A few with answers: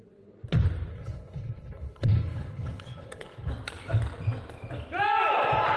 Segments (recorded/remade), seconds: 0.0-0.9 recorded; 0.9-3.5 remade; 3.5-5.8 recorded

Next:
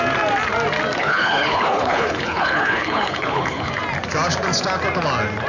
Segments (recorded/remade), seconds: 0.0-1.0 recorded; 1.0-3.7 remade; 3.7-5.5 recorded